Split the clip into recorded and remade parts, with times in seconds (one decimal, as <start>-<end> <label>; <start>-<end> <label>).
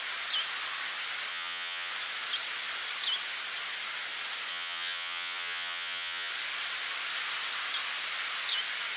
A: 0.0-1.3 recorded; 1.3-1.9 remade; 1.9-4.5 recorded; 4.5-6.3 remade; 6.3-9.0 recorded